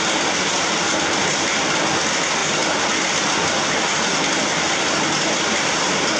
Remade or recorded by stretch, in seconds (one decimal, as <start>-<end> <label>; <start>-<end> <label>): 0.0-6.2 recorded